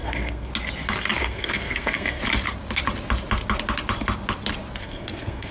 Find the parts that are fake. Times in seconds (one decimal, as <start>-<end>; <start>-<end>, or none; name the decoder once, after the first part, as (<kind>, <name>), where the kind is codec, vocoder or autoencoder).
0.0-0.5 (codec, SNAC); 1.2-2.2; 4.8-5.5